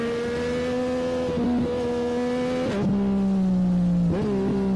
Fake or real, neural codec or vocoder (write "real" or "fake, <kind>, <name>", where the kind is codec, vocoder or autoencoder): real